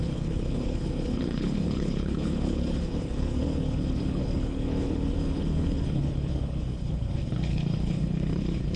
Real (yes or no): no